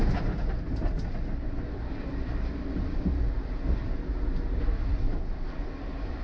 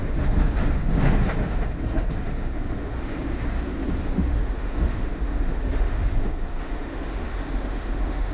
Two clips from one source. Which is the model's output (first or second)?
second